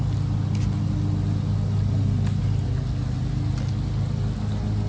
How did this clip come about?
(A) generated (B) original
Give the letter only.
B